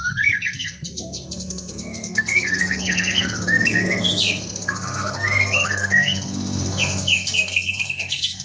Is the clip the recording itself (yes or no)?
no